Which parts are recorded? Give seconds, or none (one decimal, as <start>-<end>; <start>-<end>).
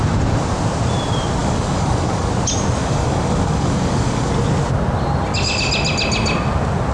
0.0-1.4; 2.3-2.8; 4.3-6.9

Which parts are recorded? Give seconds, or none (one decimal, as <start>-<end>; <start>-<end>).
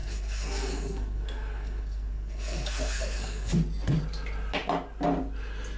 3.5-5.8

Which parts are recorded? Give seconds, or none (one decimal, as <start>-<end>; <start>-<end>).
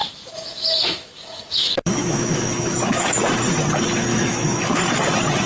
3.2-4.1; 4.8-5.5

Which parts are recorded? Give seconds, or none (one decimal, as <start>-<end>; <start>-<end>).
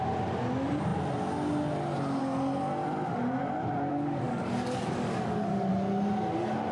0.0-3.9; 5.7-6.7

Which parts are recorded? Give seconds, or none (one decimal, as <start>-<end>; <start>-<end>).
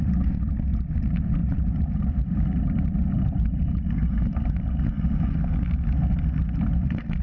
0.0-1.4; 4.6-7.2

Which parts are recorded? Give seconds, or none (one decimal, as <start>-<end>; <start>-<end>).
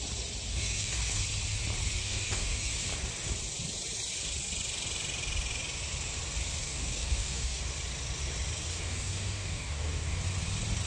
0.0-0.5; 1.2-2.0; 2.7-6.6; 7.6-8.7; 10.2-10.9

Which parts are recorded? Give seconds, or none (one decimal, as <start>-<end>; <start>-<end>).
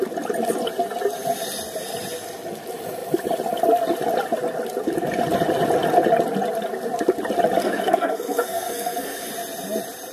0.0-7.6; 9.3-10.1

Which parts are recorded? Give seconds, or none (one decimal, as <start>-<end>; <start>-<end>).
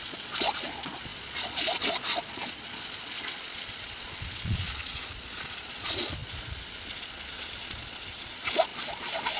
none